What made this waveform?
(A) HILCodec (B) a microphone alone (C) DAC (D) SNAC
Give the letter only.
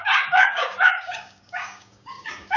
C